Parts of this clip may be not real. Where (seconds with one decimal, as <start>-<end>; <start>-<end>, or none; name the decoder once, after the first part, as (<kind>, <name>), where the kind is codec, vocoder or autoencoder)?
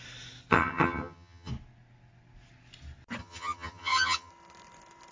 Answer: 0.5-1.5 (vocoder, HiFi-GAN); 3.2-4.3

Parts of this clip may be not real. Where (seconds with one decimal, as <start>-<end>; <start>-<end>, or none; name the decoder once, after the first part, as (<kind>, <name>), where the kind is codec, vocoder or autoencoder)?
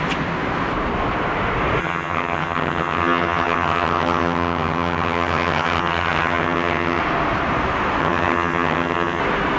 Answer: 1.8-7.0 (vocoder, HiFi-GAN); 8.0-9.2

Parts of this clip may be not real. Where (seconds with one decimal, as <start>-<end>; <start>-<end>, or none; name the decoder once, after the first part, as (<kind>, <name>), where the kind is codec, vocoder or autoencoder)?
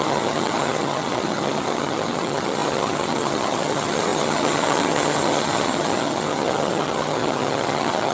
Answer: 0.0-8.1 (vocoder, HiFi-GAN)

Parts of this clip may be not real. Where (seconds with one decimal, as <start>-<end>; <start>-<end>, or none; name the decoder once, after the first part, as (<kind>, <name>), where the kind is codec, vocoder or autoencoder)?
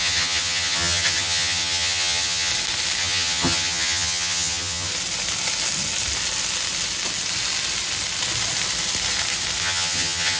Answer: 0.0-2.5 (vocoder, HiFi-GAN); 3.0-4.9; 9.6-10.4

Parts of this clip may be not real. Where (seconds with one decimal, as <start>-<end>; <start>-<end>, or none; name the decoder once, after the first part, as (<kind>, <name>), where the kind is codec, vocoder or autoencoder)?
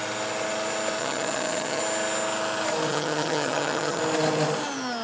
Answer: 1.0-1.8 (vocoder, HiFi-GAN); 2.9-4.0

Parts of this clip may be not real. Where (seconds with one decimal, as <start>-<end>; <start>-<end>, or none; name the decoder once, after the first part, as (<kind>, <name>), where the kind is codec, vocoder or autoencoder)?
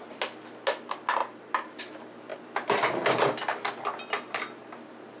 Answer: none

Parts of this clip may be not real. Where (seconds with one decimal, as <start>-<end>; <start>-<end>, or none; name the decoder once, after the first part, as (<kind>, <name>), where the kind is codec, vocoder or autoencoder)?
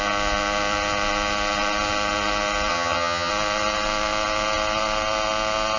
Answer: 2.7-3.3 (vocoder, HiFi-GAN)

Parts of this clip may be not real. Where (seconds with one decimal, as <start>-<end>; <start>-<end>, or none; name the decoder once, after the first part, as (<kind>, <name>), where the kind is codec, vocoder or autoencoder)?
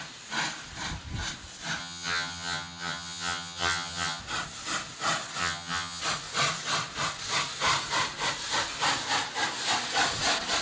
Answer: 1.8-4.2 (vocoder, HiFi-GAN); 5.4-6.0